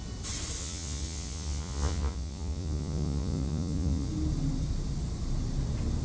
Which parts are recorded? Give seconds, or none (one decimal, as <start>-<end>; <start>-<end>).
0.0-0.6; 4.1-6.0